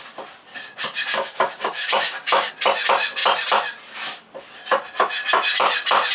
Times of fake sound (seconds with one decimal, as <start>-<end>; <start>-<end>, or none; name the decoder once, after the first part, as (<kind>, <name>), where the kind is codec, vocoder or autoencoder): 0.5-2.5 (codec, DAC)